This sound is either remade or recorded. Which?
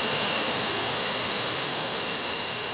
remade